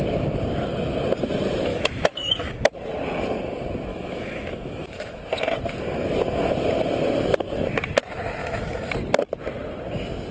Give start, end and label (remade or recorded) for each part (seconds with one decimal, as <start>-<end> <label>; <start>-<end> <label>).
0.0-1.7 recorded; 1.7-2.7 remade; 2.7-3.9 recorded; 3.9-5.2 remade; 5.2-8.4 recorded; 8.4-8.9 remade; 8.9-10.3 recorded